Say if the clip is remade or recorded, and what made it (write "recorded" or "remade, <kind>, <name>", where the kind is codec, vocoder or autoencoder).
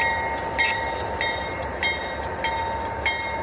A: recorded